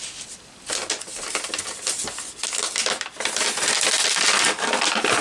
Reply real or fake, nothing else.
real